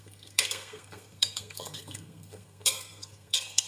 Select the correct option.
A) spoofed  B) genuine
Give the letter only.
A